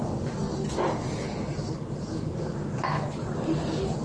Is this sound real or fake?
real